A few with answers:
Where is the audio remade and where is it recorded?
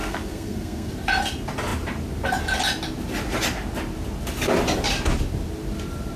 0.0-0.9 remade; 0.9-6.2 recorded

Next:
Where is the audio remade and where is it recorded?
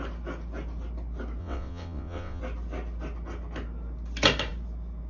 0.0-1.4 recorded; 1.4-2.4 remade; 2.4-5.1 recorded